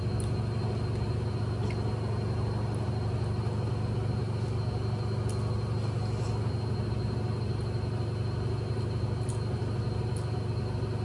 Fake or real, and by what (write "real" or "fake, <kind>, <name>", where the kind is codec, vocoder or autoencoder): real